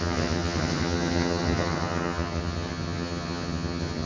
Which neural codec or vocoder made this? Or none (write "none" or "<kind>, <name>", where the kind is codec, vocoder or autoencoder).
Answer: vocoder, HiFi-GAN